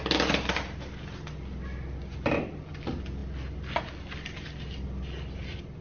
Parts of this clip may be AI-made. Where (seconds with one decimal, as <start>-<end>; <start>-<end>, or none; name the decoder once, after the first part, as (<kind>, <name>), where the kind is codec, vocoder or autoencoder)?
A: none